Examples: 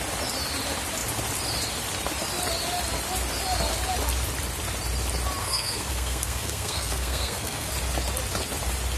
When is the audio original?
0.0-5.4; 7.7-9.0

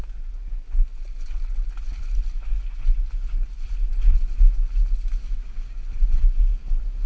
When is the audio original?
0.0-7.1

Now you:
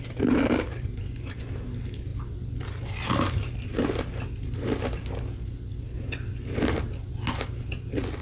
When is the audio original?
0.0-8.2